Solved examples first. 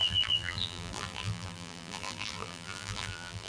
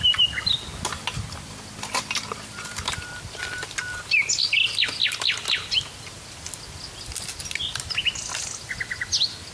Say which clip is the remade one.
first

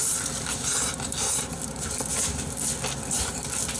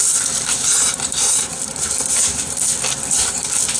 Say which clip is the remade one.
second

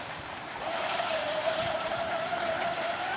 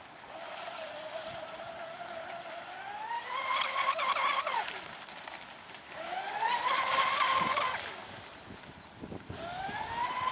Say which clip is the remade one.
first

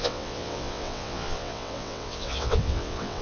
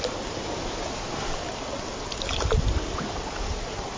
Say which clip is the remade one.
first